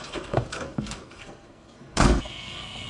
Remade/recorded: remade